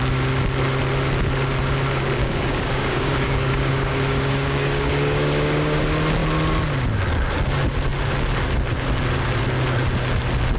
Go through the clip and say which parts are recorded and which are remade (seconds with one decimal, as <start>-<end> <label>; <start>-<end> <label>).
0.0-2.2 recorded; 2.2-5.8 remade; 5.8-10.6 recorded